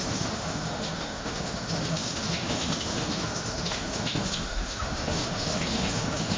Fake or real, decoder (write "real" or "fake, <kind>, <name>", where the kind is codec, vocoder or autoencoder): fake, autoencoder, DAC-VAE